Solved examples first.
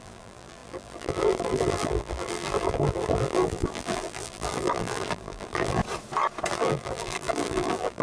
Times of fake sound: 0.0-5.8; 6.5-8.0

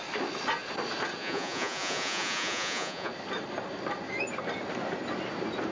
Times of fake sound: 1.2-3.1